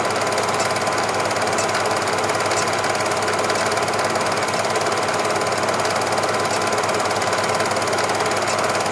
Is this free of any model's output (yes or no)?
yes